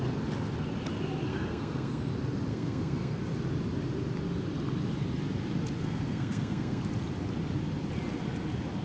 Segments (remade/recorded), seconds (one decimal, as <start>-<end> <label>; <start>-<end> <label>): 0.0-1.3 recorded; 1.3-2.1 remade; 2.1-2.5 recorded; 2.5-3.2 remade; 3.2-5.8 recorded; 5.8-6.8 remade; 6.8-8.8 recorded